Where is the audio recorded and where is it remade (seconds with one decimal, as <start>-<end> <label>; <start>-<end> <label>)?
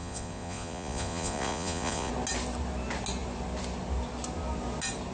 0.0-2.1 remade; 2.1-5.1 recorded